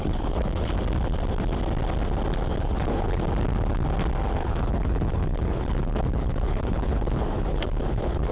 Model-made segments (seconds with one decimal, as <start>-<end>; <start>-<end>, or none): 0.0-0.7; 2.5-3.2; 4.4-8.3